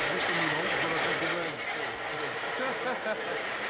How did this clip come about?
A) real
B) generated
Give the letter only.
A